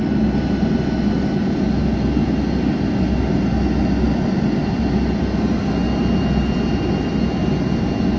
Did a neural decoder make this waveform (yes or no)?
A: no